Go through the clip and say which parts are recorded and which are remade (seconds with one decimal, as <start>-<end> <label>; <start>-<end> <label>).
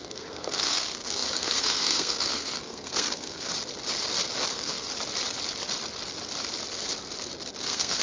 0.0-3.5 remade; 3.5-4.5 recorded; 4.5-4.9 remade; 4.9-7.6 recorded; 7.6-8.0 remade